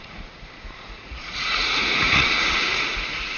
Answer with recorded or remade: remade